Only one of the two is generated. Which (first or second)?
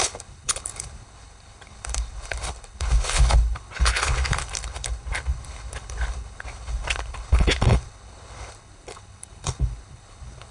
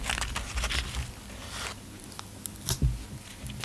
first